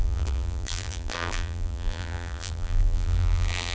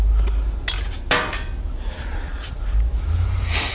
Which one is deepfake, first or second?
first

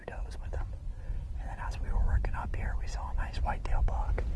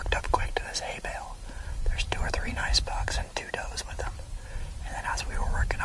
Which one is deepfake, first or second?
second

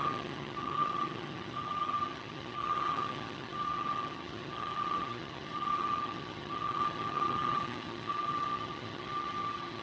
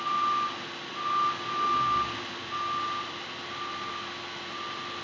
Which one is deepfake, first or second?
first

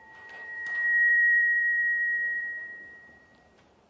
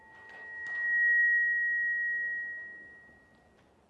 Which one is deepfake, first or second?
first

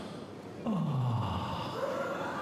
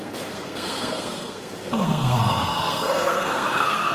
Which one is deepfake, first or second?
second